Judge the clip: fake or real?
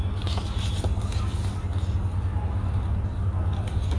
real